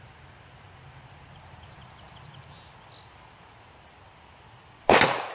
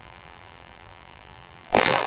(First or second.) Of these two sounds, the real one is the first